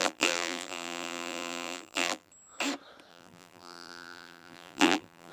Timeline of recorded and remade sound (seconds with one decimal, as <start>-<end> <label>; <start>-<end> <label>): 0.0-2.3 remade; 2.3-3.1 recorded; 3.1-5.3 remade